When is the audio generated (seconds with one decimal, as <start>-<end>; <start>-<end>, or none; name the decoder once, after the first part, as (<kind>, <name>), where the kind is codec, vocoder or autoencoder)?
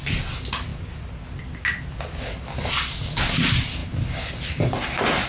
none